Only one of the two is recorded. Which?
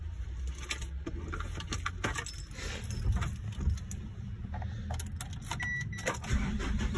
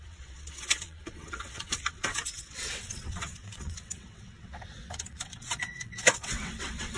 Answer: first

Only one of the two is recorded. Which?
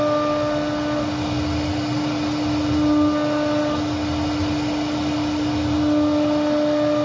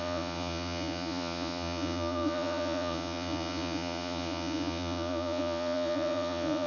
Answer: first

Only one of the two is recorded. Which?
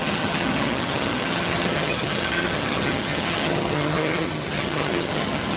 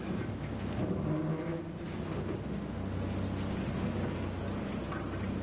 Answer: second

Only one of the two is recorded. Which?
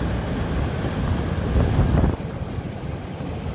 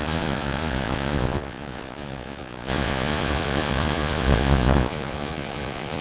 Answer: first